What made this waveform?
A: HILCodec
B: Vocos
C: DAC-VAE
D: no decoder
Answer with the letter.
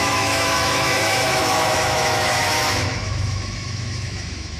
C